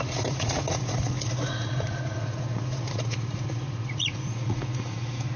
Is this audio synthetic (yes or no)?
yes